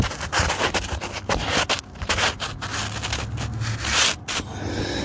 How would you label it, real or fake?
real